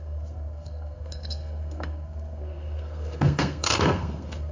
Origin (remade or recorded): remade